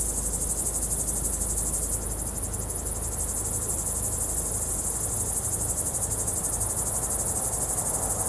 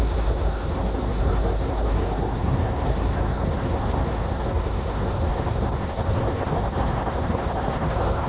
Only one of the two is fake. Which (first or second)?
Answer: second